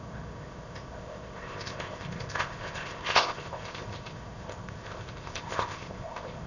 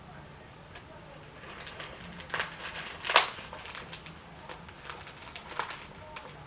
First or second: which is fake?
first